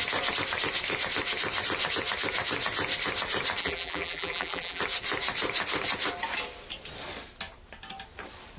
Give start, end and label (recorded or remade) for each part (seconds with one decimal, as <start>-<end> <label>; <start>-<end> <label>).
0.0-3.6 recorded; 3.6-4.8 remade; 4.8-8.6 recorded